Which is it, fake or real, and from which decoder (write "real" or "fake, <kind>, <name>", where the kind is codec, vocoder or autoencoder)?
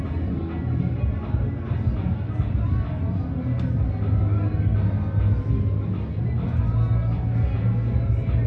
real